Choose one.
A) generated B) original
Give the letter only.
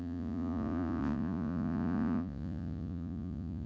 A